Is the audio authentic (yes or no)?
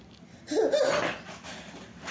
yes